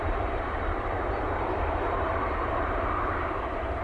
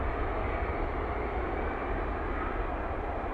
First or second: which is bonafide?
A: second